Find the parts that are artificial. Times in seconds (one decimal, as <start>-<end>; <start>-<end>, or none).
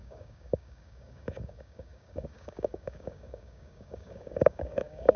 0.0-5.2